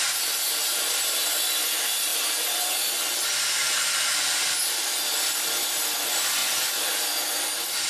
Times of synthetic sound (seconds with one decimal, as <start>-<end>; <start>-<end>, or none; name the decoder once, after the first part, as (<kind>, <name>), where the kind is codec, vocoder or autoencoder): 0.7-1.3 (vocoder, BigVGAN v2)